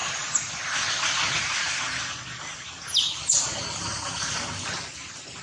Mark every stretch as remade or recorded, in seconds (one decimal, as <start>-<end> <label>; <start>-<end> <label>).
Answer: 0.0-5.4 recorded